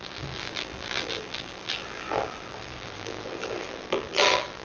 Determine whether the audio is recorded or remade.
remade